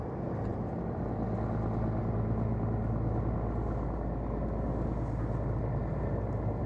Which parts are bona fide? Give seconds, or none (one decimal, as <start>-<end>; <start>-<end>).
0.0-6.7

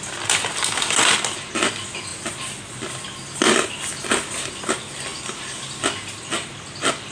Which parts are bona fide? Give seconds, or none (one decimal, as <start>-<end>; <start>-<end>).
0.0-7.1

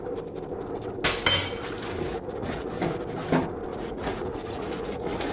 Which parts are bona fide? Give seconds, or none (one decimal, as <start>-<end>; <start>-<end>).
0.0-2.1; 2.7-3.7

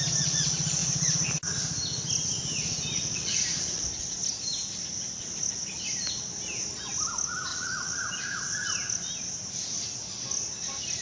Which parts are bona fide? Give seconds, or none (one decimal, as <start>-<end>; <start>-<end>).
0.0-0.8; 1.4-3.2; 3.8-7.5; 8.0-11.0